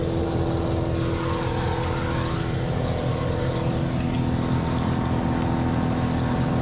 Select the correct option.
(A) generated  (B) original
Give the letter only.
B